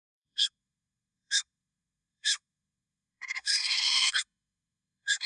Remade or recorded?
remade